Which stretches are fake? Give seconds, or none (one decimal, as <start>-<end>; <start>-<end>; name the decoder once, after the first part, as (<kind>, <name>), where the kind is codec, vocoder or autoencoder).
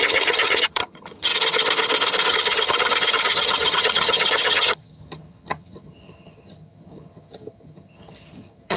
0.0-1.3 (vocoder, HiFi-GAN); 2.3-8.8